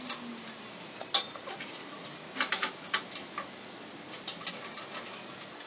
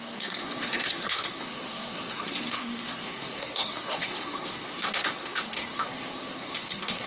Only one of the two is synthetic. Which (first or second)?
second